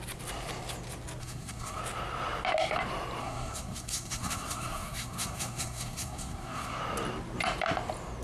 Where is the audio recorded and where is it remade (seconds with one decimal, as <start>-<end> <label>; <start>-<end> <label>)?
0.0-1.2 recorded; 1.2-1.8 remade; 1.8-3.2 recorded; 3.2-6.8 remade; 6.8-8.2 recorded